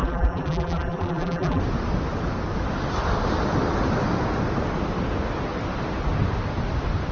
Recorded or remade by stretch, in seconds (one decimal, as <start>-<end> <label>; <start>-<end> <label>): 0.0-1.6 remade; 1.6-7.1 recorded